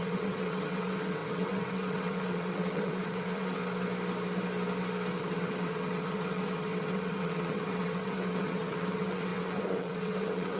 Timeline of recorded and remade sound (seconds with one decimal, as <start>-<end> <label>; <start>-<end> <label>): 0.0-3.6 remade; 3.6-5.2 recorded; 5.2-10.6 remade